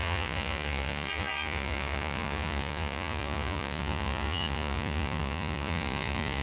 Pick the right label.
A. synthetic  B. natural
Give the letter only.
A